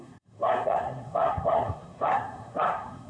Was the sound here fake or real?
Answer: fake